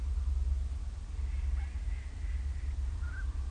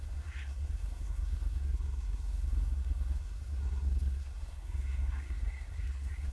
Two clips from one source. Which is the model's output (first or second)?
second